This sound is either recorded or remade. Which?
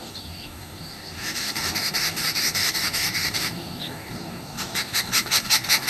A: remade